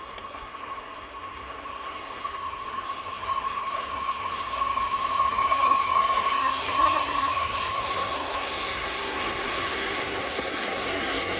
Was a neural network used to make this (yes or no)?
yes